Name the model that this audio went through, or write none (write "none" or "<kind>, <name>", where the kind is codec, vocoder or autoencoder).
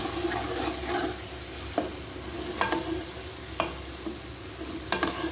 none